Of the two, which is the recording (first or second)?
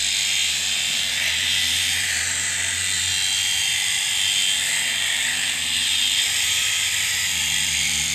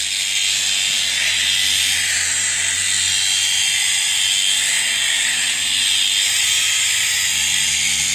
second